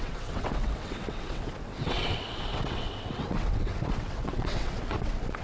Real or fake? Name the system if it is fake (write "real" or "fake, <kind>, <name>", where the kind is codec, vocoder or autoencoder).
fake, vocoder, WaveNeXt